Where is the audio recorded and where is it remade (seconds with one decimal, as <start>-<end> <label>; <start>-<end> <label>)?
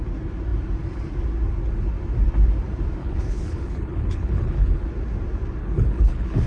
0.0-3.0 recorded; 3.0-4.9 remade; 4.9-5.6 recorded; 5.6-6.5 remade